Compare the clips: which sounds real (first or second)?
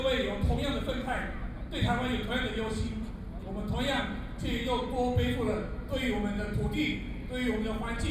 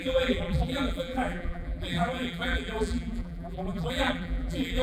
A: first